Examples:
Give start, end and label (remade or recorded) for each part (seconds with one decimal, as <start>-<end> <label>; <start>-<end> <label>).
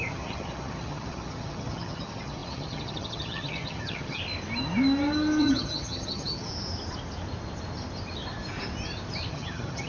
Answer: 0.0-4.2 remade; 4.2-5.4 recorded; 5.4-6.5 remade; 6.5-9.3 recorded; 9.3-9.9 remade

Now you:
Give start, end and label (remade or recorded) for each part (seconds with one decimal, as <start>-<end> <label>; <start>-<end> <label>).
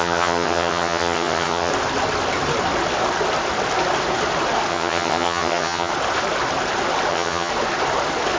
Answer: 0.0-1.7 remade; 1.7-4.7 recorded; 4.7-5.9 remade; 5.9-7.1 recorded; 7.1-7.5 remade; 7.5-8.4 recorded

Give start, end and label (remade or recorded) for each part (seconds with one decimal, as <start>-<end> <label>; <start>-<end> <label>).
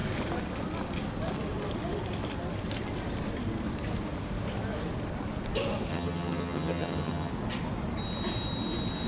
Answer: 0.0-5.9 recorded; 5.9-7.3 remade; 7.3-9.1 recorded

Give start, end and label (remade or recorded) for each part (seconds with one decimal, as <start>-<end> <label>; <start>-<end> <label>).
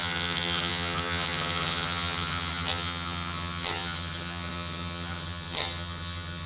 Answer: 0.0-6.5 remade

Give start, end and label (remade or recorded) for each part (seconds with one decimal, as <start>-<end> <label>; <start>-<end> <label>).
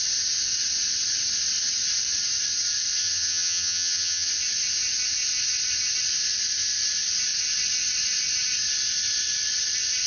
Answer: 0.0-3.0 recorded; 3.0-4.3 remade; 4.3-10.1 recorded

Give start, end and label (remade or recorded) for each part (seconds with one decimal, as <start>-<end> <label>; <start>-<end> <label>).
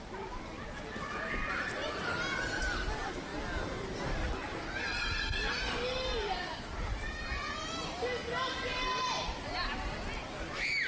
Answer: 0.0-10.9 recorded